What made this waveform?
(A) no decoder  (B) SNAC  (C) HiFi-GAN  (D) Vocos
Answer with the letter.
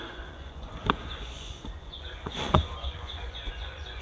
D